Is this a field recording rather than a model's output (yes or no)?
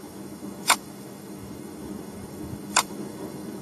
no